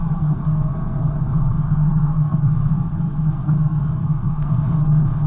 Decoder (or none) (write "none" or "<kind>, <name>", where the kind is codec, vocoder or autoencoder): codec, SNAC